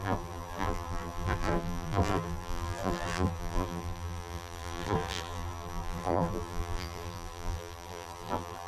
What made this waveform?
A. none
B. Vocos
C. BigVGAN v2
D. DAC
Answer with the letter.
C